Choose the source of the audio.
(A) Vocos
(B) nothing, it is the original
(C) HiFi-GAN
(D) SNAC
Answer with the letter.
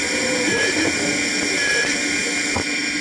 B